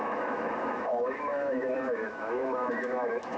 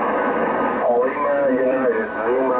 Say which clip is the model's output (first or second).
first